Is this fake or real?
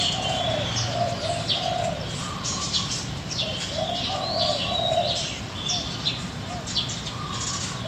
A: real